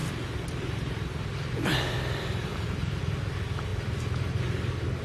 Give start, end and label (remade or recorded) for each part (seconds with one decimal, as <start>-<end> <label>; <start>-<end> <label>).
0.0-3.0 remade; 3.0-3.7 recorded; 3.7-5.0 remade